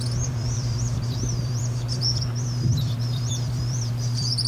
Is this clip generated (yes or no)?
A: yes